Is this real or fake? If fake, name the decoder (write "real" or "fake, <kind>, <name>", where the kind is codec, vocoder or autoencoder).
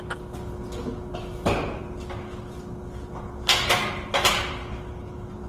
real